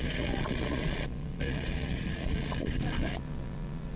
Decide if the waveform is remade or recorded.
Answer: remade